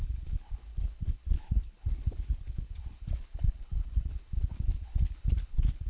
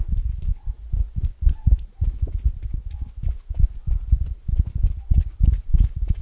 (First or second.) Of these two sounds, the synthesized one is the first